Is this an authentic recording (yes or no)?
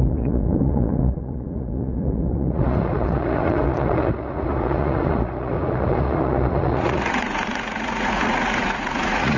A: no